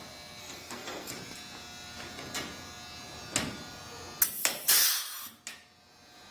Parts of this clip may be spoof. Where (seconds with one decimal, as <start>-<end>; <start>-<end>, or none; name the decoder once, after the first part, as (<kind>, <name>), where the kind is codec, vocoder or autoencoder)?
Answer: 0.4-1.1 (codec, SNAC)